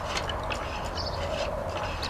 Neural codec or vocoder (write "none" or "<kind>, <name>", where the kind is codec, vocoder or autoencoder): none